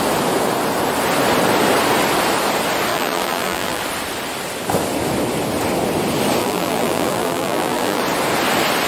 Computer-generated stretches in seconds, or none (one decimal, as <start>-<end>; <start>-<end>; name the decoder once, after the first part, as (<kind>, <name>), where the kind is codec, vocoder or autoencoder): 2.9-3.8 (vocoder, BigVGAN v2); 6.4-8.0